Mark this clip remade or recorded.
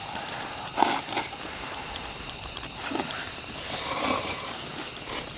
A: remade